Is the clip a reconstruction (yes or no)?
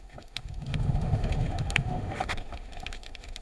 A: yes